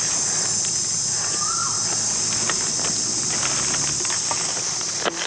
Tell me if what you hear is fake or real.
real